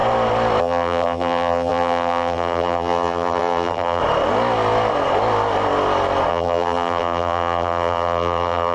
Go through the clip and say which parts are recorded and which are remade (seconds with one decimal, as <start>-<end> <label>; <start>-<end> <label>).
0.0-0.6 recorded; 0.6-4.0 remade; 4.0-6.3 recorded; 6.3-8.7 remade